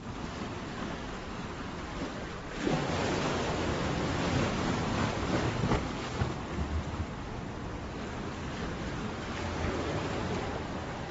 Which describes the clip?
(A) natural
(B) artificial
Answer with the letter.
A